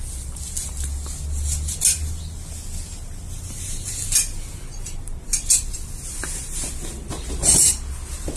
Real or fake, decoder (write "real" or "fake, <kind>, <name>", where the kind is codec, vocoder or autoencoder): real